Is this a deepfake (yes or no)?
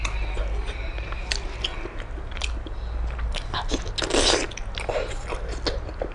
no